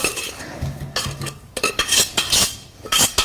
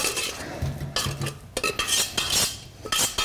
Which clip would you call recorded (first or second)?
second